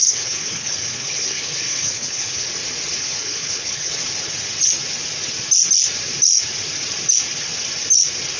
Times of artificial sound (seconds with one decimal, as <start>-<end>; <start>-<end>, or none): 0.0-2.5; 3.0-3.9